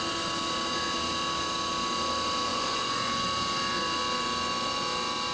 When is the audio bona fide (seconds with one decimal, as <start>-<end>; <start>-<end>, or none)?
0.0-2.5; 3.1-5.3